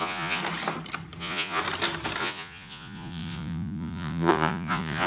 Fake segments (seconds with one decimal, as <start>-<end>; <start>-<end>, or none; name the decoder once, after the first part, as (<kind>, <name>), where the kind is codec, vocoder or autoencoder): 0.0-0.4 (vocoder, Vocos); 1.2-1.6; 2.2-5.1